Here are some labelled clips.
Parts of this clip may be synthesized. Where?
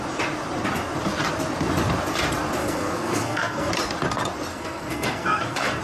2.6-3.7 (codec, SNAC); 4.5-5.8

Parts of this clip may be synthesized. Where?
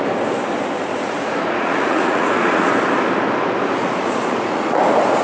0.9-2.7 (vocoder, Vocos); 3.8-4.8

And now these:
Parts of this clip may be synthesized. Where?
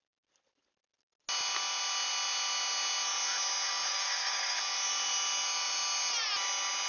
3.9-4.6 (codec, DAC)